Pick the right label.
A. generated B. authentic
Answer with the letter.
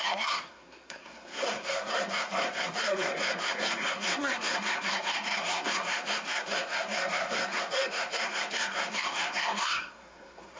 A